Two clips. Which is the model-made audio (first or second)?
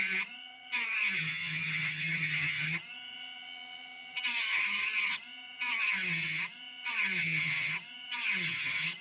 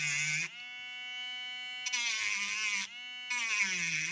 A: first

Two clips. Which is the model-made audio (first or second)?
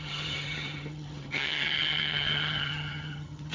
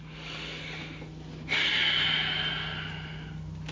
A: first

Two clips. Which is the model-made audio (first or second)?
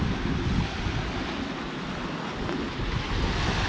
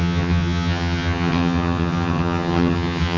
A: second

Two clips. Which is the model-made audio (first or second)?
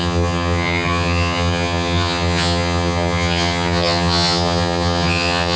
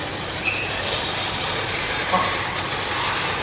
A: first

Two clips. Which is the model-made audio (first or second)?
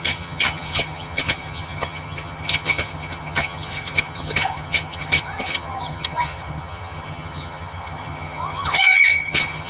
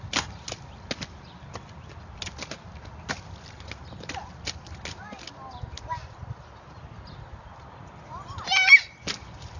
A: first